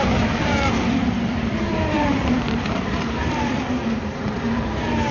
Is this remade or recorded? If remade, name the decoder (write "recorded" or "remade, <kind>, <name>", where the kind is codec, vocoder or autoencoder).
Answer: remade, vocoder, BigVGAN v2